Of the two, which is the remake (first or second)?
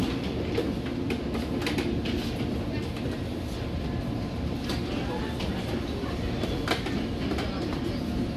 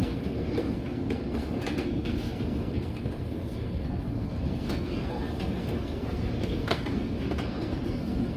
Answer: second